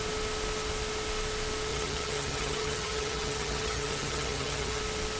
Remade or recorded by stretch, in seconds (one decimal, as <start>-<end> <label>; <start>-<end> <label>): 0.0-1.7 recorded; 1.7-4.8 remade; 4.8-5.2 recorded